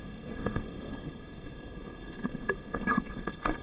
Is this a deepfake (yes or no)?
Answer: yes